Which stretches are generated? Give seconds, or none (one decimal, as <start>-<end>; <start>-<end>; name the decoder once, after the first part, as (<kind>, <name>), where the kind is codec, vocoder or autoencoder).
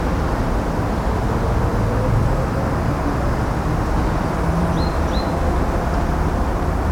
none